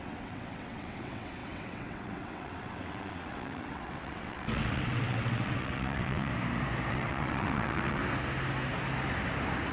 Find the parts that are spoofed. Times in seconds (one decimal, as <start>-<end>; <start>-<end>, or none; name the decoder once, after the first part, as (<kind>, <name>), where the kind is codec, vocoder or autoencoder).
0.0-6.3 (vocoder, WaveNeXt); 6.9-8.0